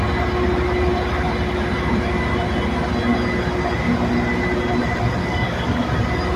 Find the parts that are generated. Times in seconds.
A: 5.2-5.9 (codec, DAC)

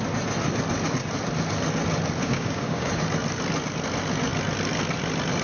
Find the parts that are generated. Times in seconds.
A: 2.2-3.0 (codec, DAC)

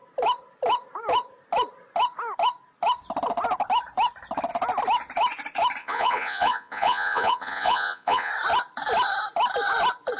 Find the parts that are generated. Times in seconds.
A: 5.8-8.3 (vocoder, Vocos)

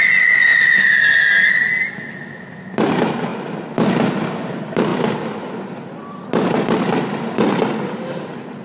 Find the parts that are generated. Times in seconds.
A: none